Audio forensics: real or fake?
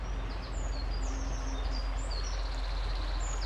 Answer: real